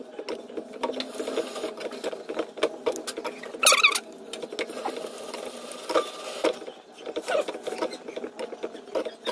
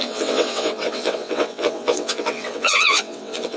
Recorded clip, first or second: first